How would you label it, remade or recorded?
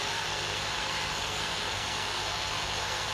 remade